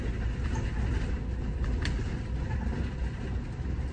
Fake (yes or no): no